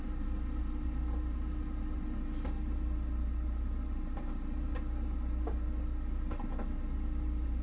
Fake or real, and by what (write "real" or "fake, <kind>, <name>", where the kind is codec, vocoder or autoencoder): real